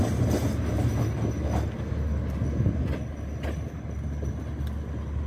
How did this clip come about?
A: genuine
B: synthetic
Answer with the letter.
A